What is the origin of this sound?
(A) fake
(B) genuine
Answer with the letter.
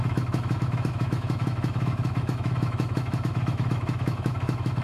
A